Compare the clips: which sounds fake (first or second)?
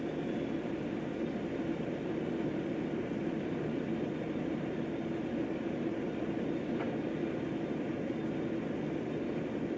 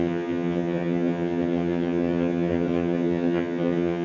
second